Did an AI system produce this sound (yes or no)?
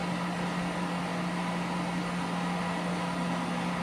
no